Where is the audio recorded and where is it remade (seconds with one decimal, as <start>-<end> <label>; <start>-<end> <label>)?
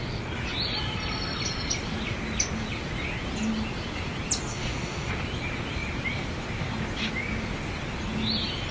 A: 0.0-4.5 recorded; 4.5-5.1 remade; 5.1-8.7 recorded